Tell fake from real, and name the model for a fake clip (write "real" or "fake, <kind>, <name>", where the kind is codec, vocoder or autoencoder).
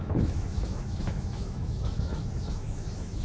fake, autoencoder, DAC-VAE